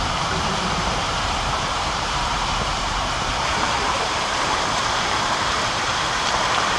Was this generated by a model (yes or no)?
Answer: yes